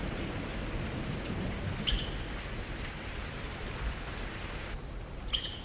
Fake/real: real